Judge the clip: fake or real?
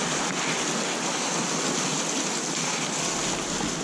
real